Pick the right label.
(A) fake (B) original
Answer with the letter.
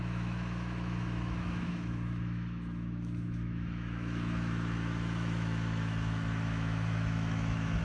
A